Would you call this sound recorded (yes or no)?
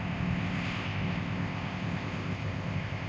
no